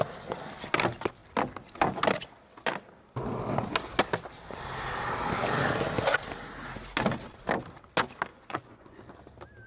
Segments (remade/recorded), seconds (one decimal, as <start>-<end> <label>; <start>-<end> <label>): 0.0-8.3 recorded; 8.3-9.0 remade; 9.0-9.7 recorded

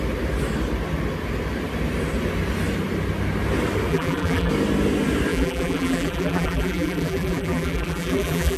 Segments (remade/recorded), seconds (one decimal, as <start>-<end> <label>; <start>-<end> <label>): 0.0-3.9 recorded; 3.9-4.5 remade; 4.5-5.3 recorded; 5.3-8.6 remade

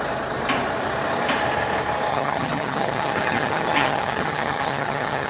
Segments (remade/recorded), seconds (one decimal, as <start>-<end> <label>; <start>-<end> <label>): 0.0-2.1 recorded; 2.1-5.3 remade

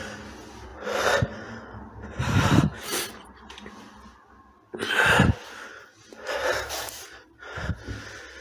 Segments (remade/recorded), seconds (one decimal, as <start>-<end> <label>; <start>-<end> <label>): 0.0-0.7 recorded; 0.7-3.7 remade; 3.7-5.7 recorded; 5.7-7.7 remade; 7.7-8.4 recorded

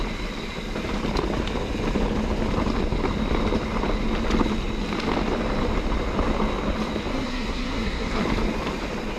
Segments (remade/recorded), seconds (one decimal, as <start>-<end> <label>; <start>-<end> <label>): 0.0-7.1 recorded; 7.1-8.2 remade; 8.2-9.2 recorded

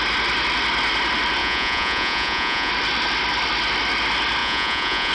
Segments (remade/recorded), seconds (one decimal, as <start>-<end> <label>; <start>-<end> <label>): 0.0-1.4 recorded; 1.4-2.7 remade; 2.7-4.4 recorded; 4.4-5.1 remade